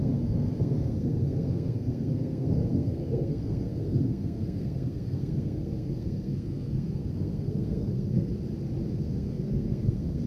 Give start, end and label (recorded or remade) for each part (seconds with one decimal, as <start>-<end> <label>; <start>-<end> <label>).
0.0-8.3 remade; 8.3-8.9 recorded; 8.9-10.3 remade